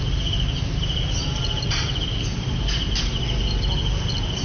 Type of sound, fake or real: real